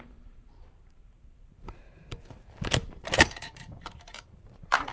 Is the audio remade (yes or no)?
yes